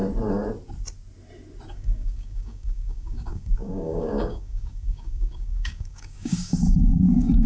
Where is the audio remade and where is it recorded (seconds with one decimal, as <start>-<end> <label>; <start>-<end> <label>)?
0.0-1.7 recorded; 1.7-7.5 remade